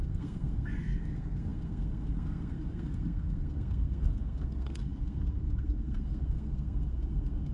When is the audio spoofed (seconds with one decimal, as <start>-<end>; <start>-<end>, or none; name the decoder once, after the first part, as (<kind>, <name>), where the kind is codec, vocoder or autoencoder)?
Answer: 0.0-7.5 (codec, SNAC)